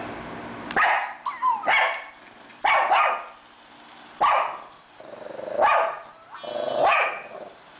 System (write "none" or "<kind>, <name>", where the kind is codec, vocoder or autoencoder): none